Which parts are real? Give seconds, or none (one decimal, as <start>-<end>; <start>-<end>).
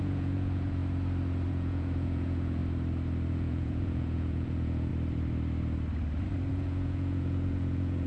0.8-1.5; 2.6-3.3; 4.9-6.5